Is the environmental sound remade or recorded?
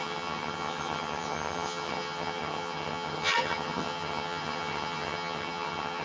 remade